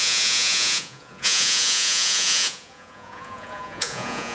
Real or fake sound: fake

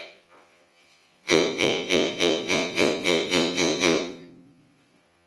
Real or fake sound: fake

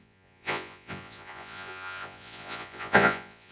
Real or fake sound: fake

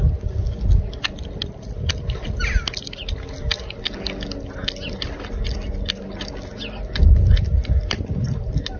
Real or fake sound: real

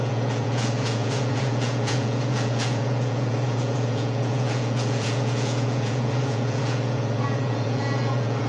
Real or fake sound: fake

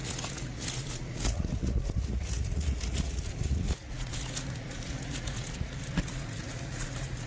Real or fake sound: fake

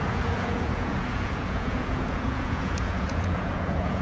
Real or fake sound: fake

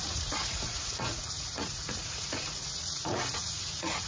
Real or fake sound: fake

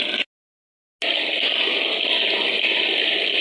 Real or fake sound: real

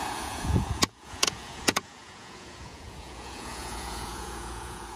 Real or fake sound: fake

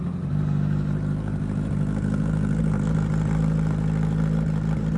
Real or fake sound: real